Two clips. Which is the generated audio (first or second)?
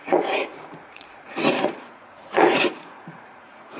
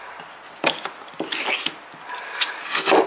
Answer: first